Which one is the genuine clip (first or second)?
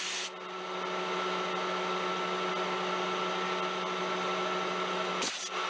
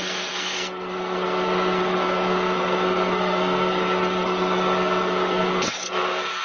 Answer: first